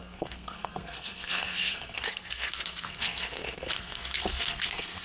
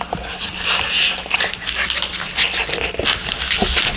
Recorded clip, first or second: second